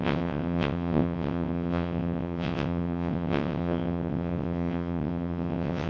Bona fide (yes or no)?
no